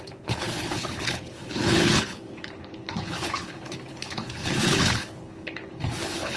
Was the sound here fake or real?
fake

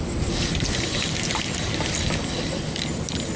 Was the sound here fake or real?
real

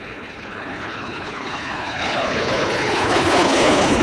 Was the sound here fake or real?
fake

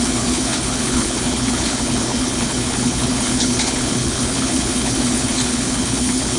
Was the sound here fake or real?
fake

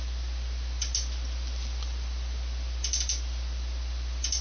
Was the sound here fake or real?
real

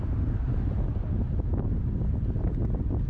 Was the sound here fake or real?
real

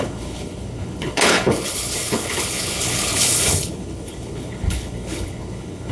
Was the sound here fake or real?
fake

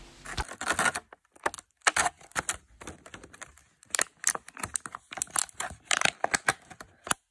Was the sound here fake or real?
real